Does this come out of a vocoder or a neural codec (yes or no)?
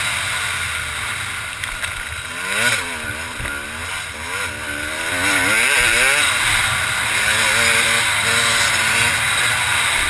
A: no